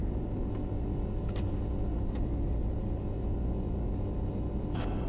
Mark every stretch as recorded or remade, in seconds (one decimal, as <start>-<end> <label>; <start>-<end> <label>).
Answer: 0.0-5.1 recorded